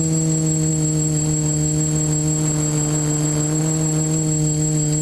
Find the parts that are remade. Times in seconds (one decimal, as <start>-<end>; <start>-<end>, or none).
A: none